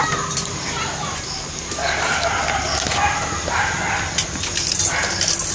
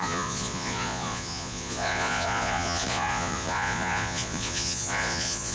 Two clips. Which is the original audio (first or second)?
first